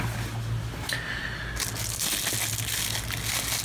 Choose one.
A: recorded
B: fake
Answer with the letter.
A